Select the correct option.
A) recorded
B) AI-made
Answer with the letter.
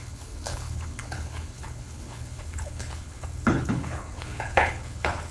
B